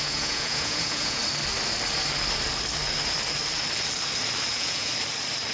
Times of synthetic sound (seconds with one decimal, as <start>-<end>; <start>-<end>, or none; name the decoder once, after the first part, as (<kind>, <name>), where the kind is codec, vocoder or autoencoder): 0.0-1.2 (vocoder, Vocos); 4.5-4.9